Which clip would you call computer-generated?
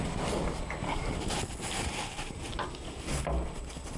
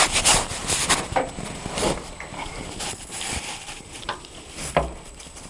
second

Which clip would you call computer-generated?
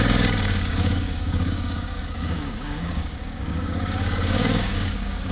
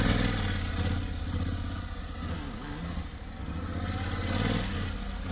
first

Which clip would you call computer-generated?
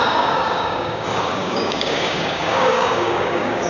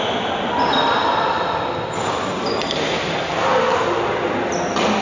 first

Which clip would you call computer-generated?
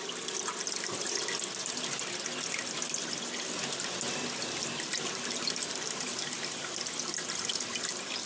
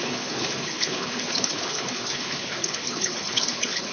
second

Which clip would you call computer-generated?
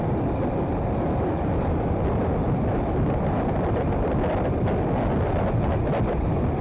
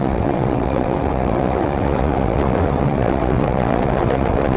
second